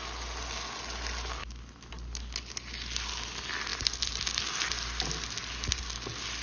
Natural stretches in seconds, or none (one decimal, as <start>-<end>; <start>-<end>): 0.0-1.4; 1.9-6.4